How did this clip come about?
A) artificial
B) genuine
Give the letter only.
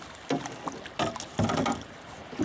B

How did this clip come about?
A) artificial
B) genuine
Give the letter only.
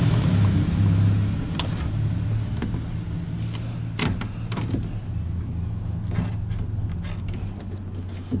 B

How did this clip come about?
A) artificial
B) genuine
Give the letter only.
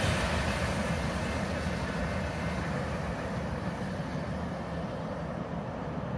B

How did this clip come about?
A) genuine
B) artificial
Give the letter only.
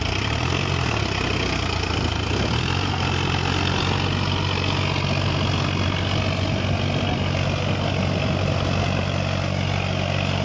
A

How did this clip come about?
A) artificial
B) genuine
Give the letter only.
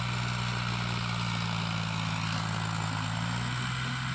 B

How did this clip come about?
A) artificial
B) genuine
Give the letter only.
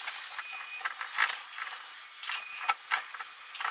B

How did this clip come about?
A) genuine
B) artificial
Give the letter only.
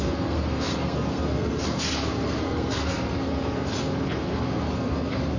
B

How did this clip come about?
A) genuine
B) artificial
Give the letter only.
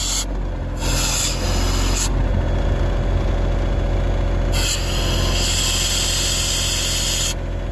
A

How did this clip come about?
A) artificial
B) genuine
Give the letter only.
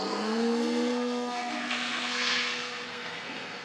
A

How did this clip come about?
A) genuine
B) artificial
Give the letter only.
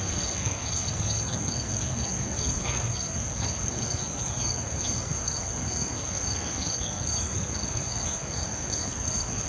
B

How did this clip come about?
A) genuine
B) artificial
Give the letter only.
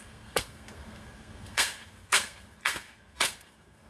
B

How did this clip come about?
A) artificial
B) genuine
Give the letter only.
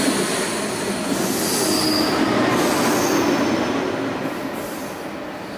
B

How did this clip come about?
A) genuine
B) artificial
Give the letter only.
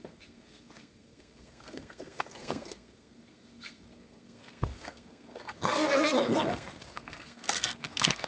B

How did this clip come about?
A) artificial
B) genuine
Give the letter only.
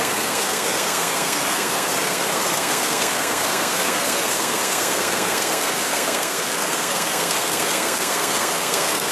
A